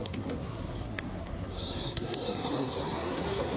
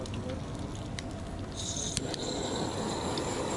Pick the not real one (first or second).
first